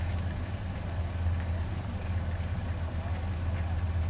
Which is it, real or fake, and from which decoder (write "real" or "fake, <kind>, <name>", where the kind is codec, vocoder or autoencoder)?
real